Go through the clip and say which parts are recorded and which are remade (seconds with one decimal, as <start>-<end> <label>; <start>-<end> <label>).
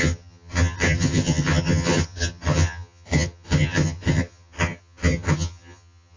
0.0-6.2 remade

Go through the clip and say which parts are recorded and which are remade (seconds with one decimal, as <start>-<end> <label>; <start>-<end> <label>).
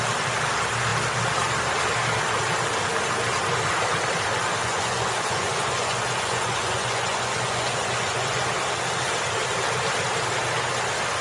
0.0-4.6 recorded; 4.6-8.4 remade; 8.4-11.2 recorded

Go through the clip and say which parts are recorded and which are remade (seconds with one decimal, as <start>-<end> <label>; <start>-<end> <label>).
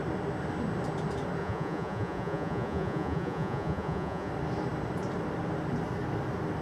0.0-1.4 recorded; 1.4-4.3 remade; 4.3-6.6 recorded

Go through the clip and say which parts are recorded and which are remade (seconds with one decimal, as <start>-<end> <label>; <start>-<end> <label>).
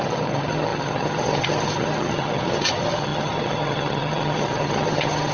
0.0-5.3 remade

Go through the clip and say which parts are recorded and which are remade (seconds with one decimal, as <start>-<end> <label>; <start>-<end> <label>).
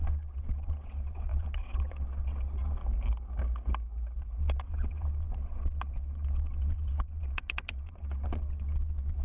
0.0-2.8 remade; 2.8-4.4 recorded; 4.4-9.2 remade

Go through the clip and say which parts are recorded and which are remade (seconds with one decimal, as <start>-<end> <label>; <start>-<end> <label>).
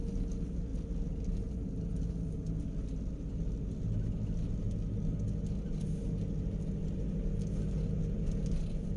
0.0-9.0 recorded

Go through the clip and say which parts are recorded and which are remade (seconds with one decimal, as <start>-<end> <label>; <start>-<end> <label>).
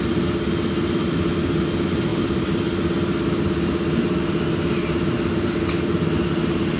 0.0-6.8 recorded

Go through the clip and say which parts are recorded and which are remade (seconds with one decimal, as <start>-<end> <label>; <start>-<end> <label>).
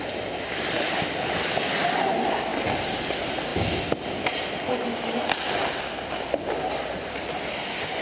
0.0-2.5 recorded; 2.5-3.1 remade; 3.1-8.0 recorded